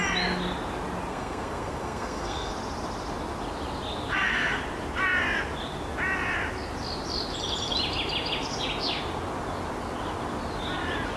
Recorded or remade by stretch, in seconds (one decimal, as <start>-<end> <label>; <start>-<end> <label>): 0.0-1.1 recorded; 1.1-2.5 remade; 2.5-4.1 recorded; 4.1-4.6 remade; 4.6-11.2 recorded